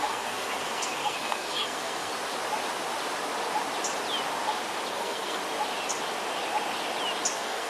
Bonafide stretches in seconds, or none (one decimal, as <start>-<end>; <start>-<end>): 2.1-4.9; 5.4-7.3